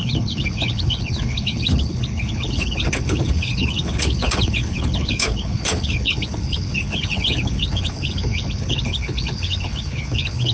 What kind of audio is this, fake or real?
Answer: fake